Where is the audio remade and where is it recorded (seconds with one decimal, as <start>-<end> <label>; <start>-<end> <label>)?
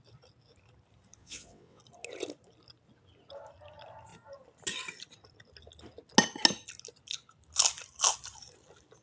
0.0-1.2 recorded; 1.2-1.8 remade; 1.8-9.0 recorded